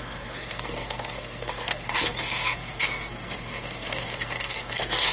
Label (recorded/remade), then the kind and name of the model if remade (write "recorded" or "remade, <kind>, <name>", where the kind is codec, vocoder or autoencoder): remade, codec, SNAC